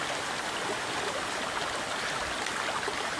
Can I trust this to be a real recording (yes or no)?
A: yes